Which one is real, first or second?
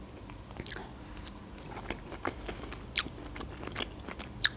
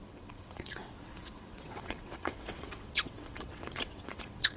first